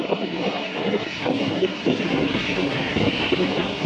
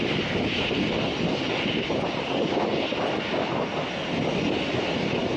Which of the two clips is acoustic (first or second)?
second